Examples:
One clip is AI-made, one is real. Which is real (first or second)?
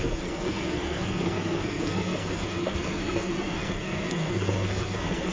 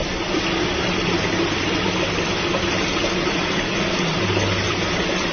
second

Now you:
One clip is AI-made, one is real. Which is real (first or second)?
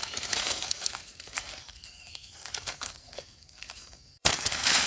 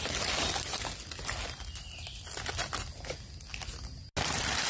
second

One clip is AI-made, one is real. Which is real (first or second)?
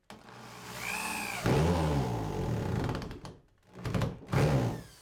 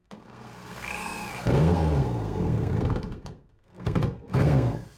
first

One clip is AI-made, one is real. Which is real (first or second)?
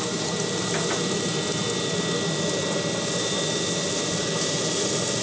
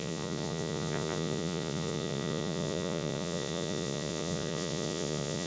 first